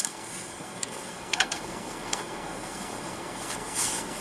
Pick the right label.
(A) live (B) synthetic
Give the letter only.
B